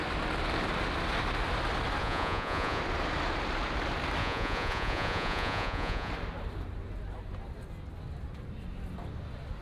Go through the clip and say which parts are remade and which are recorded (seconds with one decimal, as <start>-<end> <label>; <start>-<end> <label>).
0.0-2.0 recorded; 2.0-2.8 remade; 2.8-4.2 recorded; 4.2-6.1 remade; 6.1-9.6 recorded